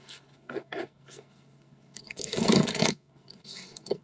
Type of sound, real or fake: fake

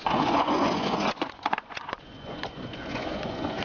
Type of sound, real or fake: fake